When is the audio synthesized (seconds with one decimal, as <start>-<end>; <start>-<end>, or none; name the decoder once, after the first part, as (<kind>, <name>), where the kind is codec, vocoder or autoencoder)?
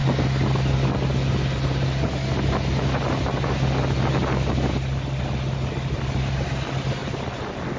none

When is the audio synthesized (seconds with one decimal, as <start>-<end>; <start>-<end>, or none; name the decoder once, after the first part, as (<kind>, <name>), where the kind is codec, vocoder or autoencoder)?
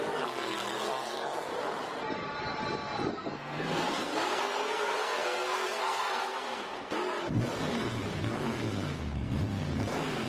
0.0-1.5 (codec, SNAC); 3.1-10.3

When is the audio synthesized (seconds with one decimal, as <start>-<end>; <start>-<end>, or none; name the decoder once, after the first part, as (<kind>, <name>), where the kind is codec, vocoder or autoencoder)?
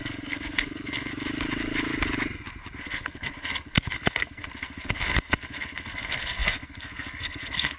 0.0-1.1 (codec, SNAC); 2.8-7.8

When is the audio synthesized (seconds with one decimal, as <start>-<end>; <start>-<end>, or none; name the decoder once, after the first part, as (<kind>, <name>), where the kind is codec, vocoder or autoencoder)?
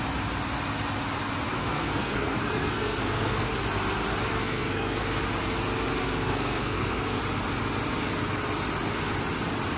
1.6-3.5 (codec, SNAC); 4.3-5.2; 6.0-7.2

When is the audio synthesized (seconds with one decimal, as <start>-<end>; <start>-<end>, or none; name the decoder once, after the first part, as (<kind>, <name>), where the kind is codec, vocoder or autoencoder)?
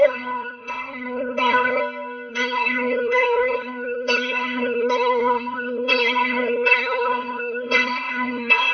0.0-1.8 (codec, SNAC); 2.3-8.7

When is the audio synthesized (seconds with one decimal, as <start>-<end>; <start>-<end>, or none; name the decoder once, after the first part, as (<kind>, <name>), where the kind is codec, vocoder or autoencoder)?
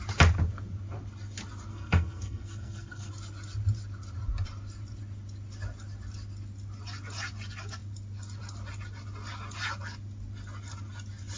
1.7-3.1 (codec, SNAC)